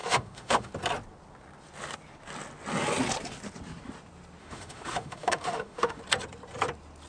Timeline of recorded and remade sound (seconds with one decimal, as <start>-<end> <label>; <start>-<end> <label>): 0.0-0.7 remade; 0.7-4.4 recorded; 4.4-6.0 remade; 6.0-7.1 recorded